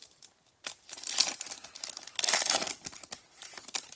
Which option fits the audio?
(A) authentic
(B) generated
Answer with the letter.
A